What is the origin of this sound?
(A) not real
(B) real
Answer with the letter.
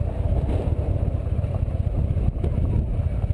B